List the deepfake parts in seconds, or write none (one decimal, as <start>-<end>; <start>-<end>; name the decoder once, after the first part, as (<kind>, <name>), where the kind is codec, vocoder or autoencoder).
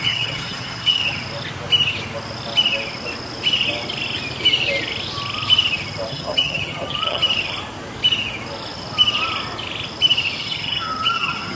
0.0-1.0 (vocoder, HiFi-GAN); 6.1-7.2; 10.4-11.6